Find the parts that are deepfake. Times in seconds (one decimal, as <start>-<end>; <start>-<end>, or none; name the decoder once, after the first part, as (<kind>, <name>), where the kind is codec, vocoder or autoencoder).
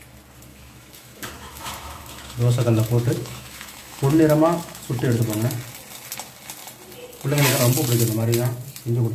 0.5-5.2 (autoencoder, DAC-VAE)